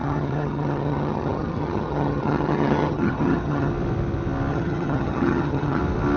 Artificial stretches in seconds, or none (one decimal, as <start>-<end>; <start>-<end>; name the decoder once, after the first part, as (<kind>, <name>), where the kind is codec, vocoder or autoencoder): 0.0-3.7 (vocoder, HiFi-GAN); 4.5-5.8